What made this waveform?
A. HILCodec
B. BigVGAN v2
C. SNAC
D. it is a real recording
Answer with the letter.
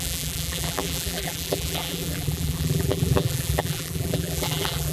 B